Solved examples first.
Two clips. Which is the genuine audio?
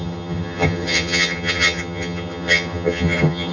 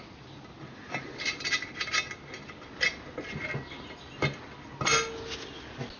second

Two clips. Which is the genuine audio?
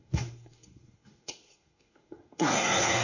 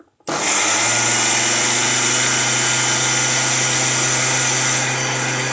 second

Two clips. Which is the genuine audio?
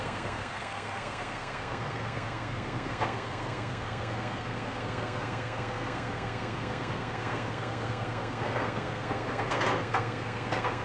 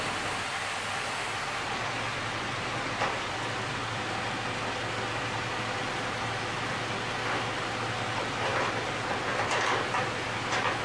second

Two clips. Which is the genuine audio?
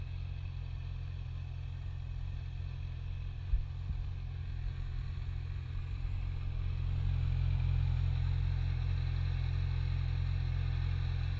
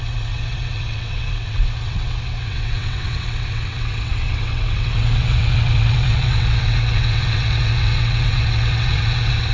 first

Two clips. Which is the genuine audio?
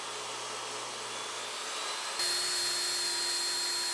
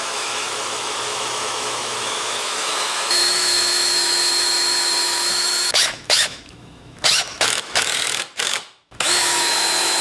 first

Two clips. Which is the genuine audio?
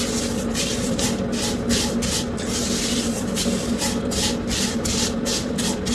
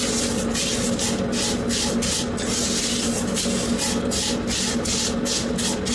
second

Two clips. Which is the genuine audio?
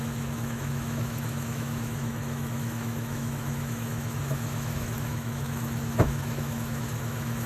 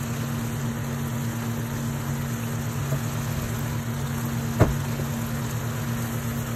second